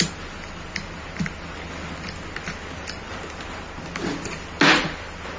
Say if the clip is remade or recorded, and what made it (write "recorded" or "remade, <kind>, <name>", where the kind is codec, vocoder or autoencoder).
recorded